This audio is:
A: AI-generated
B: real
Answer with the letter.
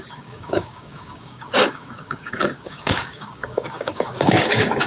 A